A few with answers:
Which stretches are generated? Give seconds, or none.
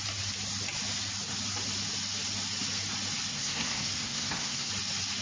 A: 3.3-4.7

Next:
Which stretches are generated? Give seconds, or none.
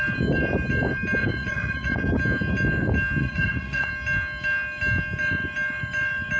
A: 1.2-2.0; 3.2-3.9